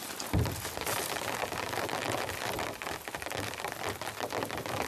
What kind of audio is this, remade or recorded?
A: recorded